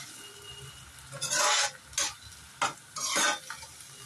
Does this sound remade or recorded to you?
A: recorded